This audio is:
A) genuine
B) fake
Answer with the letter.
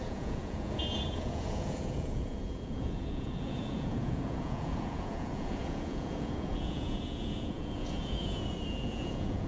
B